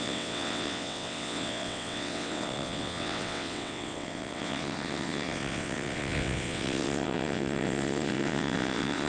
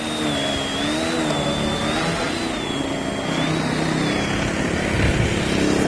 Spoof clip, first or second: first